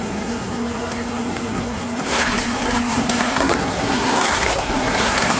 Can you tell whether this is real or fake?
fake